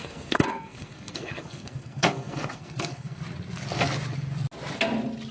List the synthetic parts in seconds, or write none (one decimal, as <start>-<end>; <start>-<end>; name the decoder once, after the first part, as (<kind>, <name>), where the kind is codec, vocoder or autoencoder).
0.0-3.2 (codec, SNAC)